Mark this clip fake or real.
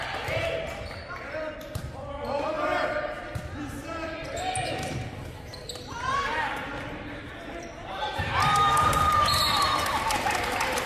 fake